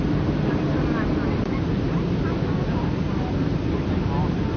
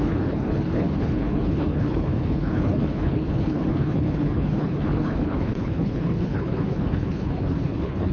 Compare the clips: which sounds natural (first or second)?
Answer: first